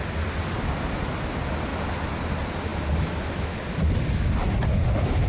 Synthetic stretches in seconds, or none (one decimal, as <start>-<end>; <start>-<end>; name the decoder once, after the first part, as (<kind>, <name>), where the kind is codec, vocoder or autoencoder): none